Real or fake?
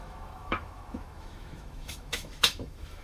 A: fake